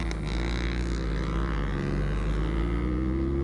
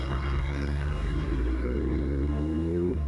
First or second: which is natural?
first